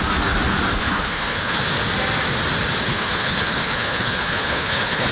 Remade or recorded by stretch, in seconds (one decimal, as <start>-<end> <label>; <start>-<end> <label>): 0.0-0.8 recorded; 0.8-1.6 remade; 1.6-2.9 recorded; 2.9-5.1 remade